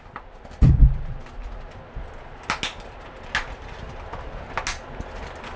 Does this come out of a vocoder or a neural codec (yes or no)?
no